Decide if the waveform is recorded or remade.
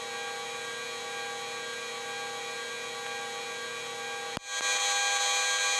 recorded